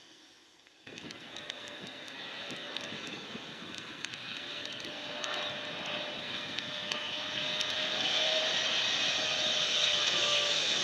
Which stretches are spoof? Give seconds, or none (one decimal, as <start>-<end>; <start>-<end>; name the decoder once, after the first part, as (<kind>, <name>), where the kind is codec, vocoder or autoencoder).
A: 0.0-5.4 (codec, SNAC); 6.2-8.4; 9.6-10.8